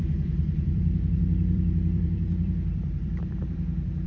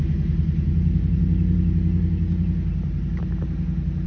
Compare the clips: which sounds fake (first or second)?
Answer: first